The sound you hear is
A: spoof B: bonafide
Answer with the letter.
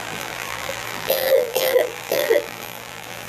A